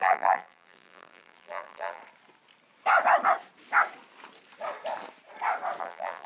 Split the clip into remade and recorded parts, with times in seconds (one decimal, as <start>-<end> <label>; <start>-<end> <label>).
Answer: 0.0-2.0 remade; 2.0-5.8 recorded; 5.8-6.3 remade

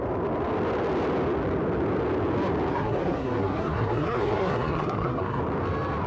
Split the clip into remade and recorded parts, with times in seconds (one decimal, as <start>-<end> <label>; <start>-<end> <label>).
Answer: 0.0-2.7 recorded; 2.7-5.4 remade; 5.4-6.1 recorded

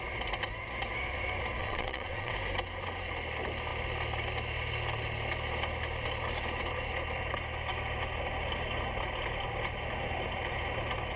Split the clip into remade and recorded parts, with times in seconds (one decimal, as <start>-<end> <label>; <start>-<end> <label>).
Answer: 0.0-1.6 recorded; 1.6-2.3 remade; 2.3-11.2 recorded

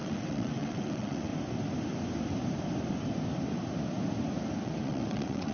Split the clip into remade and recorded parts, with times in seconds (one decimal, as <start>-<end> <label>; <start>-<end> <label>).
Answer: 0.0-1.3 remade; 1.3-4.6 recorded; 4.6-5.5 remade

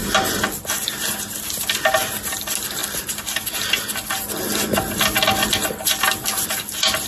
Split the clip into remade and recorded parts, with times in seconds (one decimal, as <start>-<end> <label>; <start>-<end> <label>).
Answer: 0.0-0.5 remade; 0.5-7.1 recorded

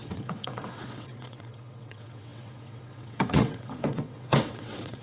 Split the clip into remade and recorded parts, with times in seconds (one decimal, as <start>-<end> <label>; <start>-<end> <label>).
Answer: 0.0-5.0 remade